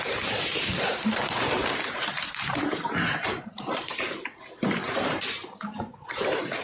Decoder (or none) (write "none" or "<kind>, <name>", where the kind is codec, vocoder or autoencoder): vocoder, BigVGAN v2